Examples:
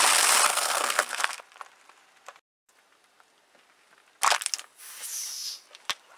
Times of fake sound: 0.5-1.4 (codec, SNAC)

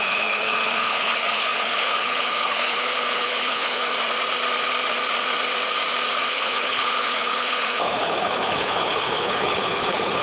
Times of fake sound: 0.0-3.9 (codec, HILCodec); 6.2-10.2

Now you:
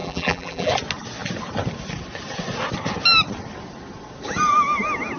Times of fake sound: 0.0-0.7 (vocoder, BigVGAN v2)